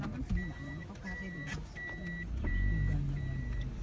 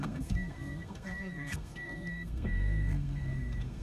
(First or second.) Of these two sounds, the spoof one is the second